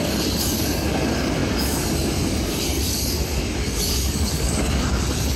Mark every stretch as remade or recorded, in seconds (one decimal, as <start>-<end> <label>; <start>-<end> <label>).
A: 0.0-5.4 remade